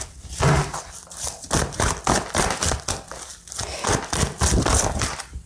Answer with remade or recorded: recorded